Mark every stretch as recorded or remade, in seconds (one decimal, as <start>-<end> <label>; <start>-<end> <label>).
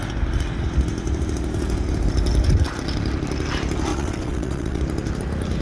0.0-3.9 recorded; 3.9-4.8 remade; 4.8-5.6 recorded